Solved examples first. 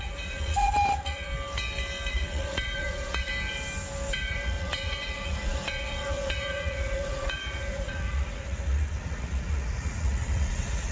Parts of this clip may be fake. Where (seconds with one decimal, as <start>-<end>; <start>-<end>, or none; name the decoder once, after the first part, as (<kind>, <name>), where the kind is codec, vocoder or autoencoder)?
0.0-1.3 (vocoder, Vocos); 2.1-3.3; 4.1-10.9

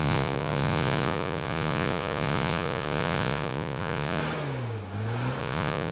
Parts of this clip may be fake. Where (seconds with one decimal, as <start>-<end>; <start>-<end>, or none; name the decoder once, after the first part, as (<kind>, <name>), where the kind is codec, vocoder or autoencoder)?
0.0-4.2 (vocoder, Vocos); 5.4-5.9

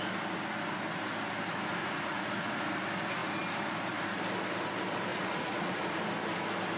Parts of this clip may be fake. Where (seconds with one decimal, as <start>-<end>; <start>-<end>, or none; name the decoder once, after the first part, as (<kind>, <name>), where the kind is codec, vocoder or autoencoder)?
1.8-2.6 (vocoder, Vocos); 5.1-6.0

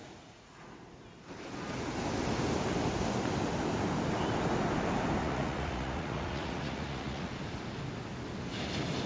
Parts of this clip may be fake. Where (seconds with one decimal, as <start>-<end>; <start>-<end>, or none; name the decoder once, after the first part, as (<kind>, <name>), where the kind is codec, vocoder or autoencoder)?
0.0-0.7 (vocoder, Vocos); 5.2-7.3

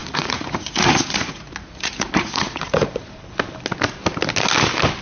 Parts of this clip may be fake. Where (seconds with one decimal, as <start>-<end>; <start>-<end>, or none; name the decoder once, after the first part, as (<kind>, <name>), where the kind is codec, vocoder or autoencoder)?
0.0-3.0 (vocoder, Vocos)

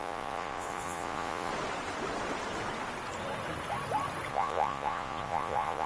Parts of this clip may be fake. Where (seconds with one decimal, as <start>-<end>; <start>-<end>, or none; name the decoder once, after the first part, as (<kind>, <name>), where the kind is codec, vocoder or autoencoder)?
0.0-1.5 (vocoder, Vocos); 4.3-5.9

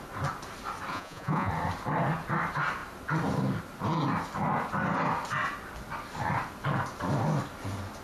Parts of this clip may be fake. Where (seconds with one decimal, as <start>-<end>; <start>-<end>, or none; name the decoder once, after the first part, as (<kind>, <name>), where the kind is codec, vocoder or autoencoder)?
0.9-1.5 (vocoder, Vocos)